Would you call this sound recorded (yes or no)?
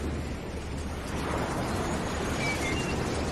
yes